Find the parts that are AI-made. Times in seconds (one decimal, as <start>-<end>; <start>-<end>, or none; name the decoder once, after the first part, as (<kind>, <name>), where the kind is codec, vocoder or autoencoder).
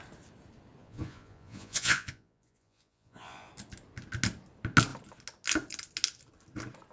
0.8-3.5 (vocoder, Vocos)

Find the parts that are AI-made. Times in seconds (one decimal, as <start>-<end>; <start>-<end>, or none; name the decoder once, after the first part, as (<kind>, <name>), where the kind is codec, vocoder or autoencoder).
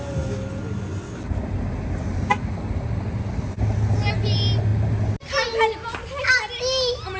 none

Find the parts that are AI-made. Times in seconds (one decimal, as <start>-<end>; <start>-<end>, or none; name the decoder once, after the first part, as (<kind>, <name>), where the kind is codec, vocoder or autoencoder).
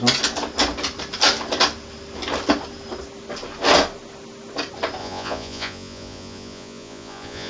5.0-7.5 (vocoder, Vocos)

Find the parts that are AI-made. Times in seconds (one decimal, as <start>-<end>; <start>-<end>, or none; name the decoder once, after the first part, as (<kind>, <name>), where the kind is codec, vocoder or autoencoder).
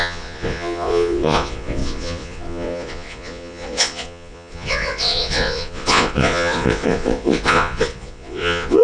0.0-8.8 (vocoder, Vocos)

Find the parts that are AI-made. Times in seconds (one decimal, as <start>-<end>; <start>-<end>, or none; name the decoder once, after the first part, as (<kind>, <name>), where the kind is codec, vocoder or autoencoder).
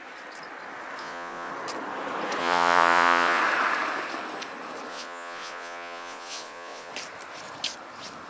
1.0-1.5 (vocoder, Vocos); 2.4-3.4; 4.9-6.9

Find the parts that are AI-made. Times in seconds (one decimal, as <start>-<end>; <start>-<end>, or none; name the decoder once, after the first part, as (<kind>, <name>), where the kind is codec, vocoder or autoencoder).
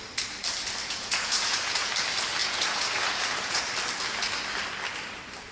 0.8-1.9 (vocoder, Vocos); 2.4-3.6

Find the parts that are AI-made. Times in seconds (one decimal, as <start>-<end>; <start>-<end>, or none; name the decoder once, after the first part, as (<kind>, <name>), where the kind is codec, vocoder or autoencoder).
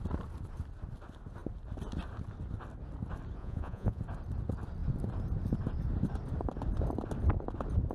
3.4-4.0 (vocoder, Vocos)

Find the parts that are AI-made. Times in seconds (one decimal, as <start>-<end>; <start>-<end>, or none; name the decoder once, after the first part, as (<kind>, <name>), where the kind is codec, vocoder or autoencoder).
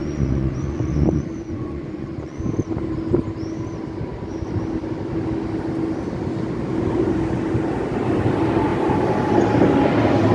0.0-2.4 (vocoder, Vocos)